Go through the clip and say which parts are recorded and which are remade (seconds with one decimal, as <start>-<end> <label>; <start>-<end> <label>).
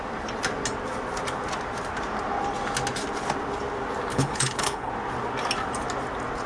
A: 0.0-4.1 recorded; 4.1-4.9 remade; 4.9-6.5 recorded